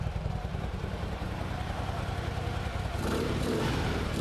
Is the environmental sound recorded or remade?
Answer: remade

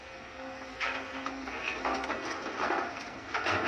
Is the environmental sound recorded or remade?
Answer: remade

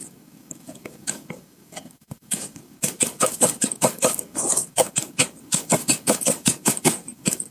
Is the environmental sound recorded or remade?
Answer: remade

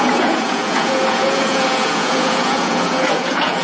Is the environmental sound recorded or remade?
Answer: remade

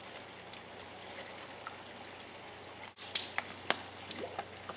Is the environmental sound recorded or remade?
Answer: recorded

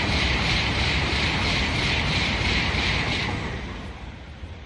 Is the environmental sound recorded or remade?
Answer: remade